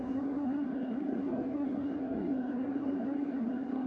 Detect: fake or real fake